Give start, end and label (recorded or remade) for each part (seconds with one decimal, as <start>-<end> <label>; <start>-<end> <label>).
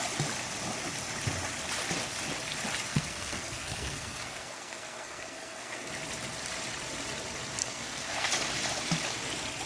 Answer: 0.0-2.9 recorded; 2.9-5.9 remade; 5.9-7.6 recorded; 7.6-8.3 remade; 8.3-9.7 recorded